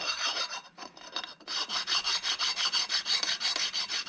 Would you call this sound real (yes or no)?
no